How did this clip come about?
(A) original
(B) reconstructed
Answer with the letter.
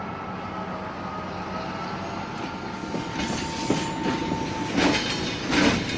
A